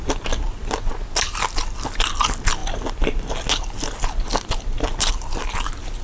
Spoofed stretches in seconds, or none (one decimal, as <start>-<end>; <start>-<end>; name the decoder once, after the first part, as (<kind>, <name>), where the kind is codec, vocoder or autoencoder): none